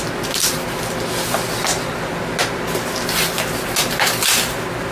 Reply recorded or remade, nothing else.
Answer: recorded